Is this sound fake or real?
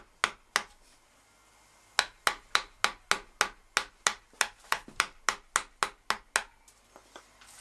real